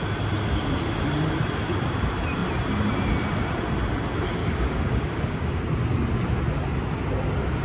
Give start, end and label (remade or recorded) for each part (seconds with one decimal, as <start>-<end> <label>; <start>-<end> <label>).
0.0-4.4 recorded; 4.4-5.6 remade; 5.6-7.6 recorded